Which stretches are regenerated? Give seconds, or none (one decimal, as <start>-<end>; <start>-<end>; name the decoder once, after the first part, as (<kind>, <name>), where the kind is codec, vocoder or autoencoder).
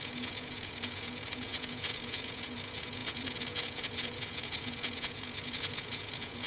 0.0-6.5 (vocoder, Vocos)